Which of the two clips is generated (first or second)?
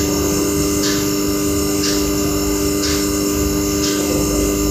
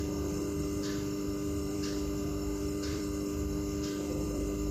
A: second